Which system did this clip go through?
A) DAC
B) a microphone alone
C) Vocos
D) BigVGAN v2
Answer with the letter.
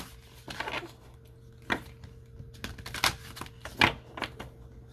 B